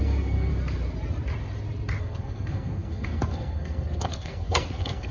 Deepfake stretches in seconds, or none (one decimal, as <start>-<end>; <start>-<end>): 0.0-0.5; 2.0-5.1